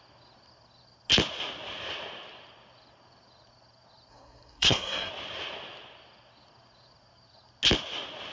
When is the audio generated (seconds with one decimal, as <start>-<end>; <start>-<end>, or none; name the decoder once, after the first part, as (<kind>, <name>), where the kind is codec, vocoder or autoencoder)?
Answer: 4.1-5.1 (codec, SNAC)